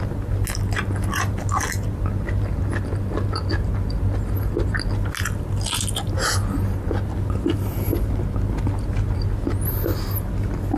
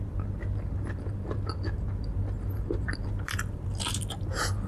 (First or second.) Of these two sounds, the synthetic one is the second